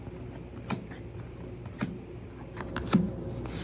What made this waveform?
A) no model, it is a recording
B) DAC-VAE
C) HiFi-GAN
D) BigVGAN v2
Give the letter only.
A